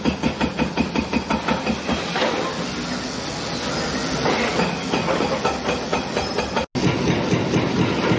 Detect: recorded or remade recorded